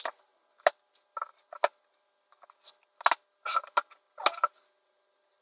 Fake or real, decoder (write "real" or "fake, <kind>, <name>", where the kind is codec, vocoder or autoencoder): real